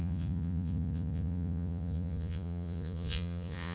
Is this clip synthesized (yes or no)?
yes